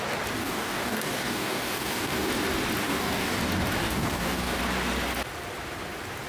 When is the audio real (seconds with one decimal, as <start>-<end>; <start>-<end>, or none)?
0.0-0.4; 2.3-2.8; 3.4-3.8; 4.6-6.3